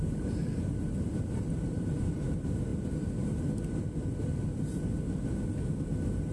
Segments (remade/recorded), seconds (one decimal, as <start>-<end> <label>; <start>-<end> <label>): 0.0-0.4 remade; 0.4-1.1 recorded; 1.1-2.7 remade; 2.7-6.3 recorded